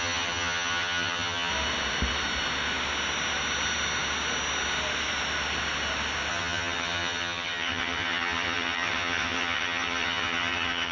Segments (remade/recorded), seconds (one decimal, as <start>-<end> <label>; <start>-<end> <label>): 0.0-1.5 remade; 1.5-6.3 recorded; 6.3-10.9 remade